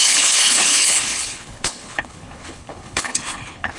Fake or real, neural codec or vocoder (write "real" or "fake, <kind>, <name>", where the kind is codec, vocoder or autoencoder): fake, codec, HILCodec